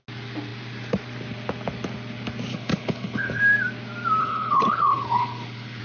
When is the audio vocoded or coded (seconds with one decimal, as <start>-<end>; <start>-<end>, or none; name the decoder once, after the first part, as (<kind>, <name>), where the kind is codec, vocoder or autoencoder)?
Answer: 2.5-3.4 (codec, HILCodec); 4.2-5.8